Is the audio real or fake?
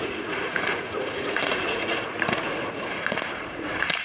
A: fake